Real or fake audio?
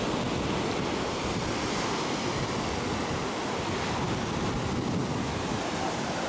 real